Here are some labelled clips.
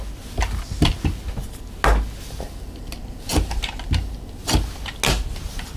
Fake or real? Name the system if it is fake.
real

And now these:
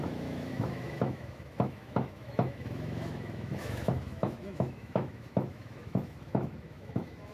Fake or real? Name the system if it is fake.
fake, autoencoder, DAC-VAE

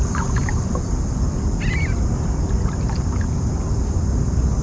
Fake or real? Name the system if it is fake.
real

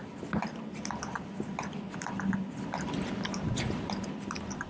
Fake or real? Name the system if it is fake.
real